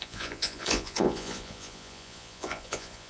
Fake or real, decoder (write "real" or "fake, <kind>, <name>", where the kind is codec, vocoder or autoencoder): fake, vocoder, Vocos